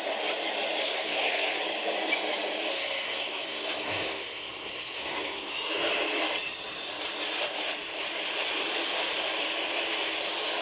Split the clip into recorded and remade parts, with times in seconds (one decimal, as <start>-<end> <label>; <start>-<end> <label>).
0.0-0.8 recorded; 0.8-1.6 remade; 1.6-2.7 recorded; 2.7-5.5 remade; 5.5-10.6 recorded